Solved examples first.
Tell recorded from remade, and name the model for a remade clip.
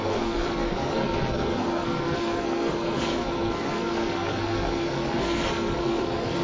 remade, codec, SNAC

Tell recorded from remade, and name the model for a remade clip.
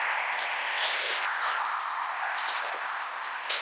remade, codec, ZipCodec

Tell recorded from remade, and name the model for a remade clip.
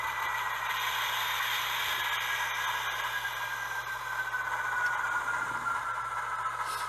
recorded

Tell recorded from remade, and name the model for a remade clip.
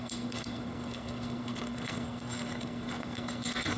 remade, codec, SNAC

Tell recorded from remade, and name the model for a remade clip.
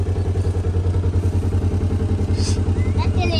recorded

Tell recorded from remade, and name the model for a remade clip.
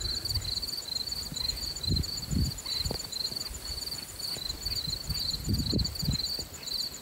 remade, vocoder, BigVGAN v2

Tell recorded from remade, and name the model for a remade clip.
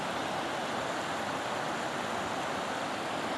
recorded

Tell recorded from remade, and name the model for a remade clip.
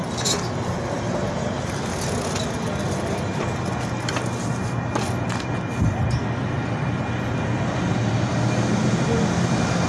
recorded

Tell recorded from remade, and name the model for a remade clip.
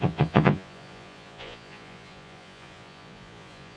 remade, vocoder, Vocos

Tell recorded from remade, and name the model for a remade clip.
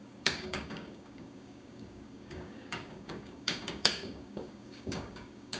remade, codec, DAC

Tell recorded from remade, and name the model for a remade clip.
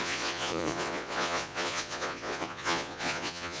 remade, vocoder, Vocos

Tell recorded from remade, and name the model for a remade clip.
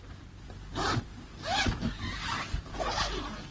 recorded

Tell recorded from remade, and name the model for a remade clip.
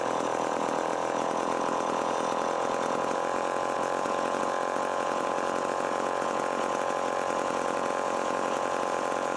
remade, vocoder, Vocos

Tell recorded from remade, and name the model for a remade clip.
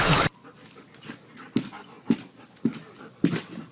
recorded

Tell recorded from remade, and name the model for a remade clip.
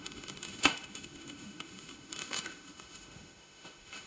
remade, autoencoder, DAC-VAE